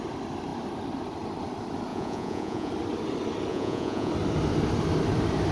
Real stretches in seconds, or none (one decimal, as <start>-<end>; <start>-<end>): 0.0-1.9; 2.7-3.5; 4.1-5.5